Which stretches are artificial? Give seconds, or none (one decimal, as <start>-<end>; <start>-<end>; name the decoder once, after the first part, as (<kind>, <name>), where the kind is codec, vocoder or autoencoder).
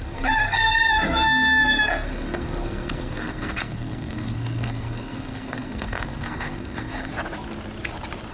0.0-7.1 (codec, SNAC)